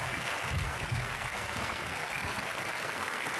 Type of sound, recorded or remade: remade